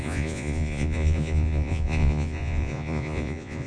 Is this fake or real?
fake